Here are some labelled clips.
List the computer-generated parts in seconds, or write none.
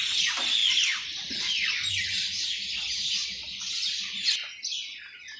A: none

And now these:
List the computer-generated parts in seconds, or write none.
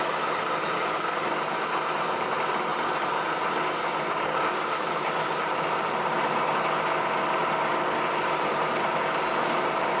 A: 7.4-8.2 (vocoder, BigVGAN v2)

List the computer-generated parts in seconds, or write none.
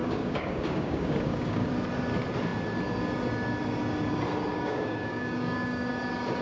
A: 0.0-1.7 (codec, DAC); 4.5-5.9